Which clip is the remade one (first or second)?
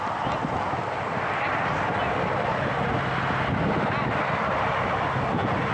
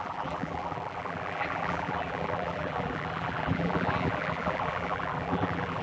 second